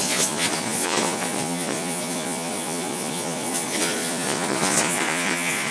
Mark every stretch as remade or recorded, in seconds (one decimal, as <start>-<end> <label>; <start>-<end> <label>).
0.0-5.7 remade